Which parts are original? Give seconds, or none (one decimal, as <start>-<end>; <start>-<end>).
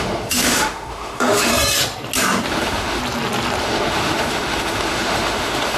1.5-2.5; 3.0-3.6